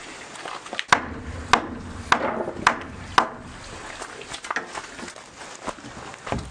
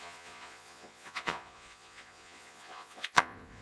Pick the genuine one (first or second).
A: first